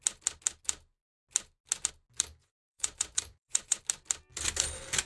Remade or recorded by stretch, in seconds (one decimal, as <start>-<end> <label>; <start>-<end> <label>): 0.0-2.4 recorded; 2.4-3.8 remade; 3.8-5.1 recorded